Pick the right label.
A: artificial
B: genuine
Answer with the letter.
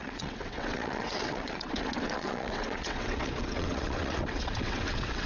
A